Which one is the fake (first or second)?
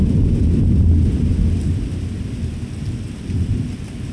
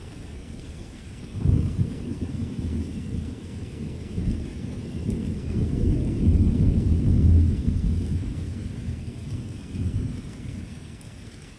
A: second